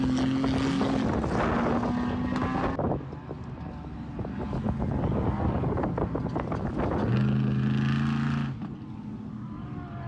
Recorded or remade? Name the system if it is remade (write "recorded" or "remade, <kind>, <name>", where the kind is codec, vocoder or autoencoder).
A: recorded